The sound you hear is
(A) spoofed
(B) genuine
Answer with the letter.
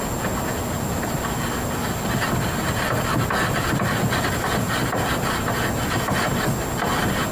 B